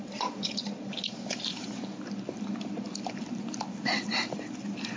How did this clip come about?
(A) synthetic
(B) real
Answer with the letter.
A